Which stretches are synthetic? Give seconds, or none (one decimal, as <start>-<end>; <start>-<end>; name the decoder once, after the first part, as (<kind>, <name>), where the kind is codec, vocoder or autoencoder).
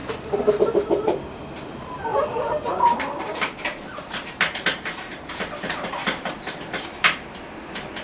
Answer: 2.1-6.7 (vocoder, BigVGAN v2)